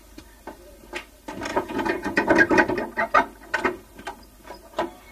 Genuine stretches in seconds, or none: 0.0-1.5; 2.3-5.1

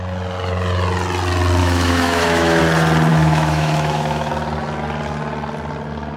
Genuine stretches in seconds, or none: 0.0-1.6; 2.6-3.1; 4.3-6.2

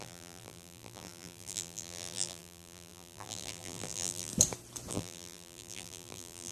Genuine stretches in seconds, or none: 4.3-4.9